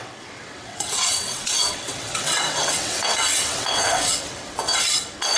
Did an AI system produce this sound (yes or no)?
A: yes